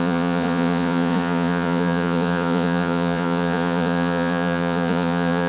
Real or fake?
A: fake